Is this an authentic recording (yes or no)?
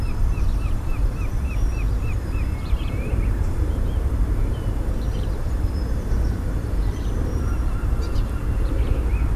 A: no